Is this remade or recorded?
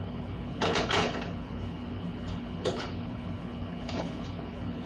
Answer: remade